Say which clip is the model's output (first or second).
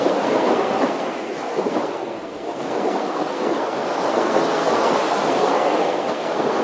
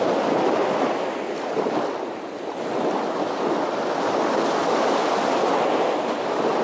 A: first